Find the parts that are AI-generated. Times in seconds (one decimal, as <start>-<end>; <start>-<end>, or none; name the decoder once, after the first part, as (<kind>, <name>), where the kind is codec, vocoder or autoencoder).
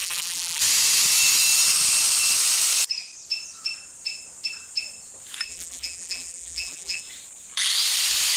0.0-0.6 (vocoder, BigVGAN v2); 5.5-7.0